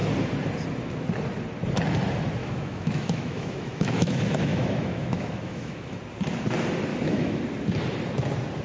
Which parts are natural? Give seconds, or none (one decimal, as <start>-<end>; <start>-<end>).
0.0-2.4; 6.0-6.9; 7.4-8.6